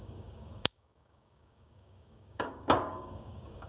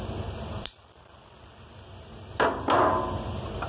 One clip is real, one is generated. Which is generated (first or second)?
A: first